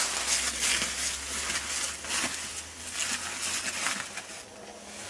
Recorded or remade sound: recorded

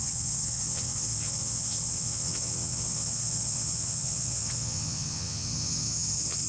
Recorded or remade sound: remade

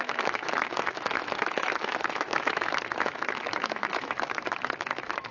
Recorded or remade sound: remade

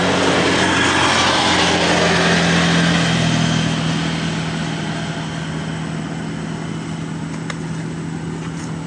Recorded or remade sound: recorded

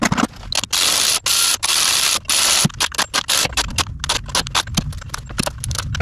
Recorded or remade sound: recorded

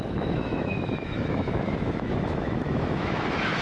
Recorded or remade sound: remade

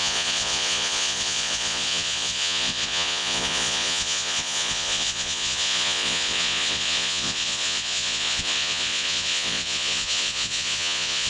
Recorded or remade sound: remade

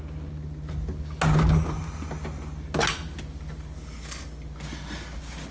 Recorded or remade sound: recorded